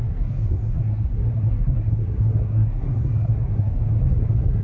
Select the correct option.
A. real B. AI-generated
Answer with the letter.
B